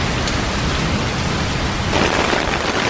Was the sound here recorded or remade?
recorded